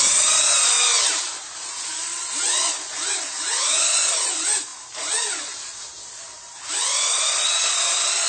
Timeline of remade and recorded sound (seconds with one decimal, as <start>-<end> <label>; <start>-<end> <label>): 0.0-8.3 recorded